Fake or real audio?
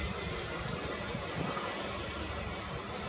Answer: real